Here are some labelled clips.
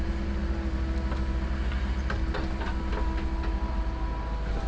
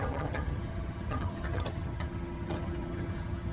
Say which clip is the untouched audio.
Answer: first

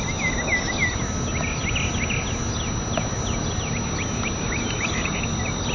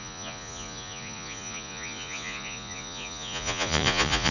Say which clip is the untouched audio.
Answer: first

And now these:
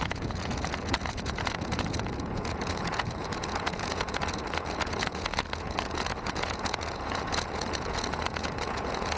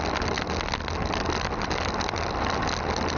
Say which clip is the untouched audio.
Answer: second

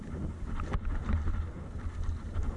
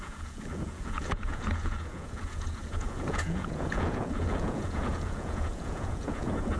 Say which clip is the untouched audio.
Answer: first